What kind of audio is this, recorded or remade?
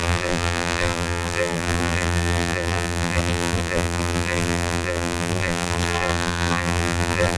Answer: remade